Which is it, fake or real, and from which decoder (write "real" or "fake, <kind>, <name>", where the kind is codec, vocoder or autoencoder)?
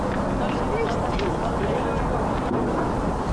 real